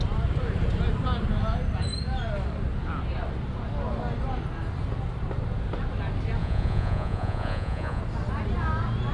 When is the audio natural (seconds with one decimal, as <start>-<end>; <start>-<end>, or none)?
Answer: 0.0-6.4; 8.0-9.1